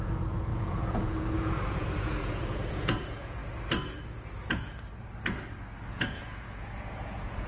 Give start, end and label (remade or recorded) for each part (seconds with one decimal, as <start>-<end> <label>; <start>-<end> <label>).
0.0-3.4 remade; 3.4-5.9 recorded; 5.9-7.5 remade